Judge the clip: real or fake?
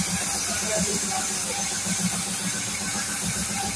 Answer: real